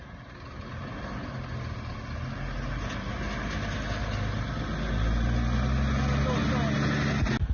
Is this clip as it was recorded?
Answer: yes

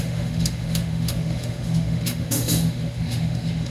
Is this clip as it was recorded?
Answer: no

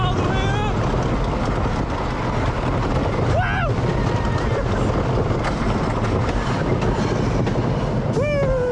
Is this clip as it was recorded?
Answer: yes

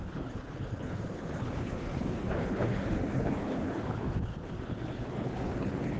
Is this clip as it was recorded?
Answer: no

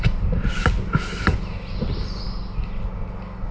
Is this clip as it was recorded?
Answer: yes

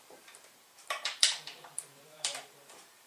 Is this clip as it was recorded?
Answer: no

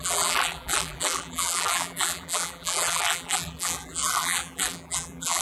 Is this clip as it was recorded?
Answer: no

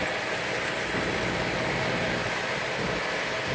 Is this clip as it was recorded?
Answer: yes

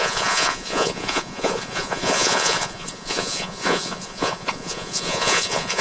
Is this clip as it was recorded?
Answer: no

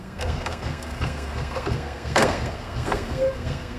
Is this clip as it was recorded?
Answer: no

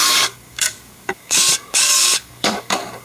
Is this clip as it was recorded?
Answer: no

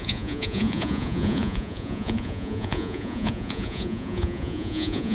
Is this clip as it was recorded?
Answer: no